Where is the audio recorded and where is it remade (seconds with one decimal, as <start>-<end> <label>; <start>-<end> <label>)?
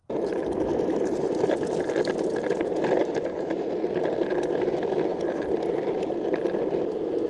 0.0-1.8 remade; 1.8-5.1 recorded; 5.1-6.6 remade; 6.6-7.3 recorded